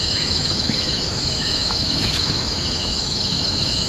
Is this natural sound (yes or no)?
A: no